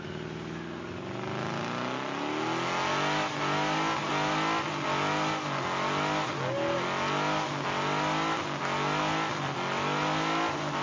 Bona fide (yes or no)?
yes